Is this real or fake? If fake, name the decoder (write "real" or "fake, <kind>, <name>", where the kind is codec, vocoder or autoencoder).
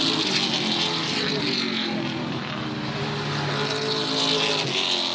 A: real